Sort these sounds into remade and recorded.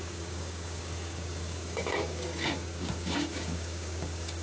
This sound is remade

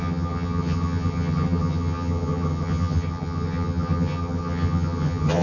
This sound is remade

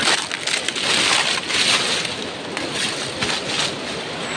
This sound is recorded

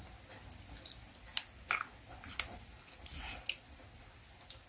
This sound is recorded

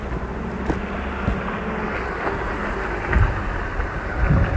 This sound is recorded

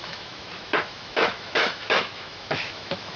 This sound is remade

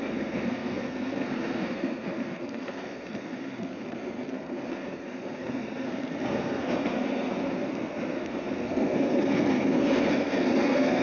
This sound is remade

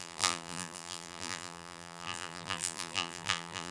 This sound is remade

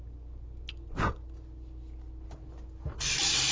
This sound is recorded